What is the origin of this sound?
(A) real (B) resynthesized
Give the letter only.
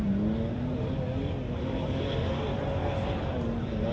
A